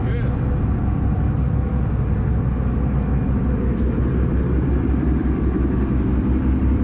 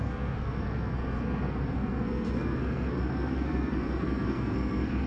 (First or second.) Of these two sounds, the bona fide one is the first